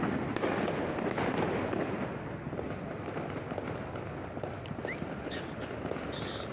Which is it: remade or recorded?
recorded